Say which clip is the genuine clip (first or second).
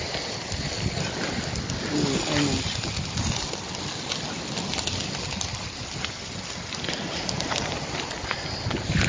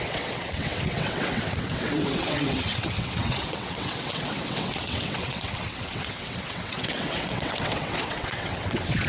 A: first